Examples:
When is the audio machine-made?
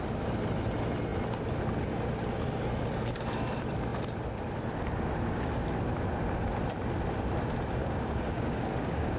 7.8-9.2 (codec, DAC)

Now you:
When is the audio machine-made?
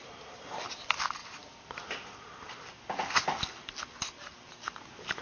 none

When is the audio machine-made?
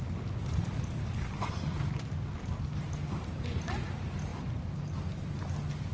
none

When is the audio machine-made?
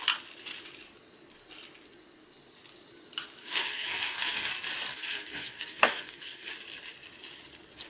3.4-4.5 (codec, SNAC); 4.9-6.5